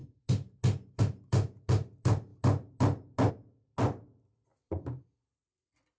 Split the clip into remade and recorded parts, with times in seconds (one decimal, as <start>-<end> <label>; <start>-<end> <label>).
0.0-6.0 recorded